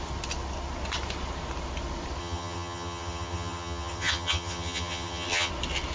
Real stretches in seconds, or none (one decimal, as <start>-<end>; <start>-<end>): 0.0-2.2; 5.5-5.9